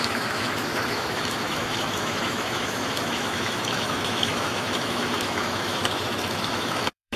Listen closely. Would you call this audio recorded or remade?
remade